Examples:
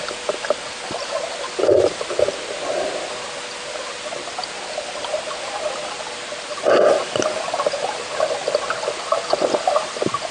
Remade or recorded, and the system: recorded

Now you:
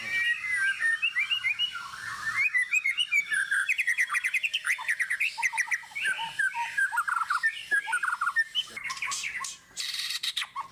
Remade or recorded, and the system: remade, vocoder, BigVGAN v2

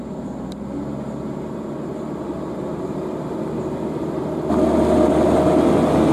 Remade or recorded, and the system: recorded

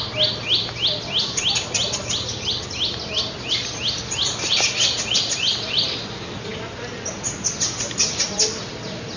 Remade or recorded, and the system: recorded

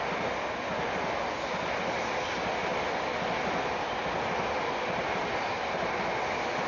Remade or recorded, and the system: recorded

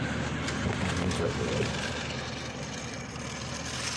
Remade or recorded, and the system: recorded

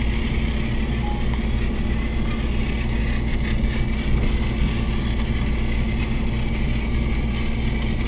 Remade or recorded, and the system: recorded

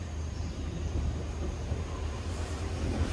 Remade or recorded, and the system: remade, vocoder, BigVGAN v2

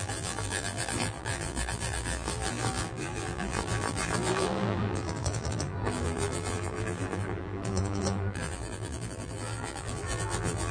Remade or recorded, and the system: remade, vocoder, BigVGAN v2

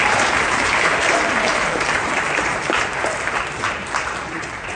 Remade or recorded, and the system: remade, vocoder, BigVGAN v2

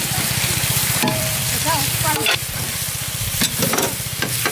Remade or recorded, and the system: remade, vocoder, BigVGAN v2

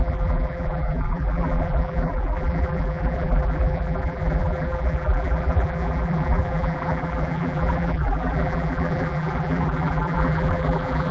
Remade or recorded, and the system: remade, vocoder, BigVGAN v2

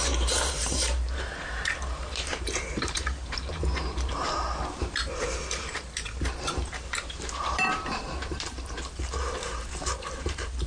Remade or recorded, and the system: remade, vocoder, BigVGAN v2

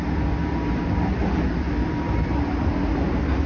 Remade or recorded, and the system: recorded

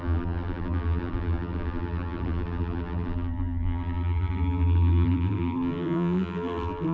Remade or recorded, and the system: remade, vocoder, BigVGAN v2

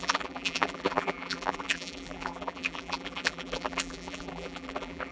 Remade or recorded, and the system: remade, vocoder, BigVGAN v2